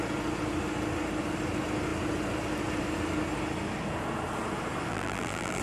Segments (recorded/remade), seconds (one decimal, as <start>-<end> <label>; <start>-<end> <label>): 0.0-4.9 recorded; 4.9-5.6 remade